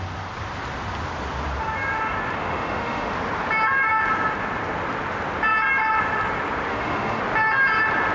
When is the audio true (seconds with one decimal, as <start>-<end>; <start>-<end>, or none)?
0.0-2.4; 3.1-6.7; 7.2-8.1